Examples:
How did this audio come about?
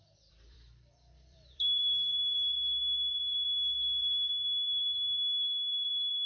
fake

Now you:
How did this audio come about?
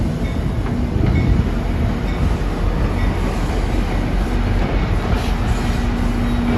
real